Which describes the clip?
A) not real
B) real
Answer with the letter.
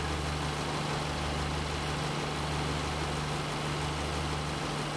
B